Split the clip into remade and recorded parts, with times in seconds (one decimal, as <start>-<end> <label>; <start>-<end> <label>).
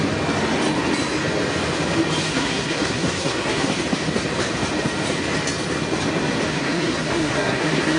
0.0-2.3 recorded; 2.3-3.7 remade; 3.7-6.5 recorded; 6.5-8.0 remade